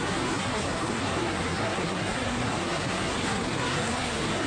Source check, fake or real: fake